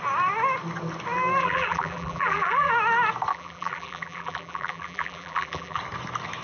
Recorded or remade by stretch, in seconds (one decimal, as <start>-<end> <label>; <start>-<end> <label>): 0.0-1.4 recorded; 1.4-2.7 remade; 2.7-3.3 recorded; 3.3-5.8 remade; 5.8-6.4 recorded